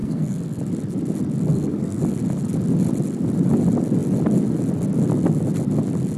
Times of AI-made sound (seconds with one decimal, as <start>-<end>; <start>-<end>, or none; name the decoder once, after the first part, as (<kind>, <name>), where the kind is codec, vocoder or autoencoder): 0.0-0.6 (codec, SNAC); 1.5-2.0